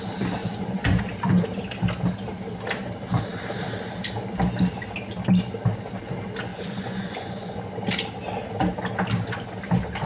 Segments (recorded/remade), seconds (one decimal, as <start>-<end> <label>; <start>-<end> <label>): 0.0-0.4 recorded; 0.4-1.0 remade; 1.0-6.5 recorded; 6.5-7.6 remade; 7.6-10.1 recorded